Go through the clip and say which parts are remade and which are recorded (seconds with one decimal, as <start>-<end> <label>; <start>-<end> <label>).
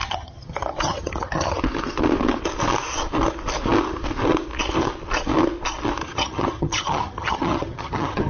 0.0-1.6 remade; 1.6-6.0 recorded; 6.0-8.3 remade